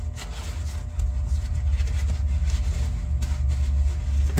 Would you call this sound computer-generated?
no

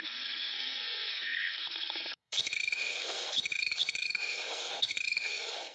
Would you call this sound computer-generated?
yes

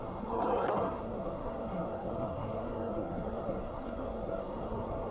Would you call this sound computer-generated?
yes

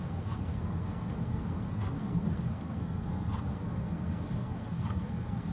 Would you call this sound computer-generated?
yes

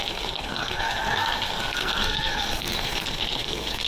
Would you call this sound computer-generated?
yes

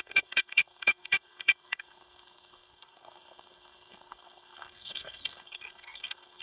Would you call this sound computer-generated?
yes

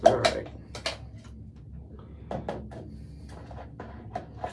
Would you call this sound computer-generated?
no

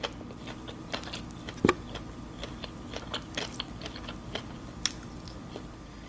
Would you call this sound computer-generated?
no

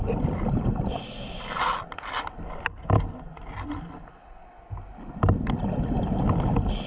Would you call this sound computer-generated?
no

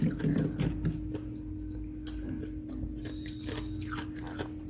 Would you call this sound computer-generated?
no